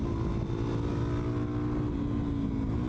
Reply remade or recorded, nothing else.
recorded